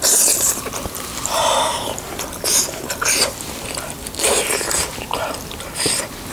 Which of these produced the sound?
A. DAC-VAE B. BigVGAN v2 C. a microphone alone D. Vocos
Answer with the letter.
B